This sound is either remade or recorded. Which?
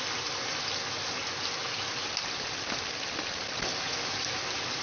recorded